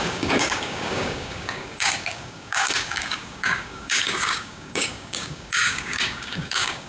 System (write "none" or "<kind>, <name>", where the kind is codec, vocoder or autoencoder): codec, DAC